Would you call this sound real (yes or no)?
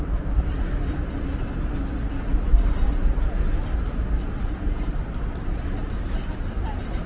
yes